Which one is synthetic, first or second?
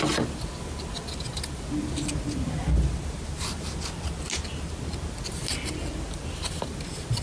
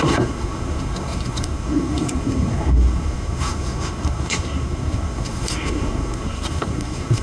second